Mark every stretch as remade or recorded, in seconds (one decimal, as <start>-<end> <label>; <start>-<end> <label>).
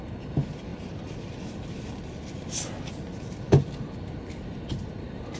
0.0-5.4 recorded